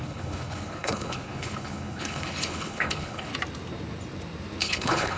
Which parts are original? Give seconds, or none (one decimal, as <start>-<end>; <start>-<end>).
3.3-4.6